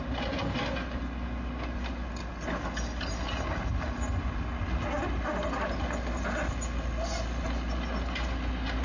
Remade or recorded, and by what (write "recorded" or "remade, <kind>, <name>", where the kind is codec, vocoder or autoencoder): recorded